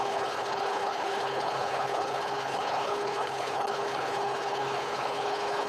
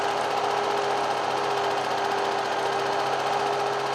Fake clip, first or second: first